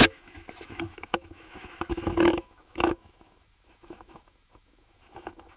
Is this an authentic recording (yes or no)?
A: no